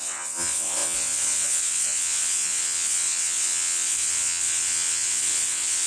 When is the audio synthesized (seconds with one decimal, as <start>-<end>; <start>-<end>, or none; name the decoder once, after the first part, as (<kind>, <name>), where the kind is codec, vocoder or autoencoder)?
0.0-5.9 (vocoder, WaveNeXt)